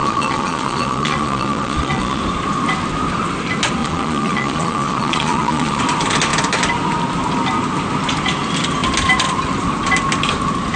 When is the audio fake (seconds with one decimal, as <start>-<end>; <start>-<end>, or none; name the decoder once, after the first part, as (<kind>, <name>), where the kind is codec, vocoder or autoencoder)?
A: 0.0-2.2 (vocoder, Vocos); 3.8-5.8